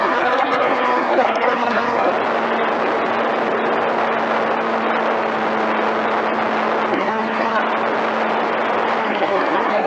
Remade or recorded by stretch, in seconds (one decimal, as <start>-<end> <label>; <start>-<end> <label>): 0.0-2.1 remade; 2.1-6.9 recorded; 6.9-7.6 remade; 7.6-9.0 recorded; 9.0-9.9 remade